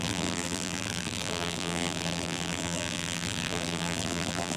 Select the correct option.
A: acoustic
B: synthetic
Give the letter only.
B